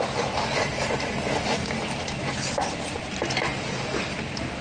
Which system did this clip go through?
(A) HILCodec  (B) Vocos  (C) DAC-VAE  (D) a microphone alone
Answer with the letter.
D